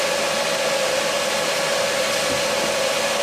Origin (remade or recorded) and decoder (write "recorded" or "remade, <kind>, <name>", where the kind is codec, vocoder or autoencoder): recorded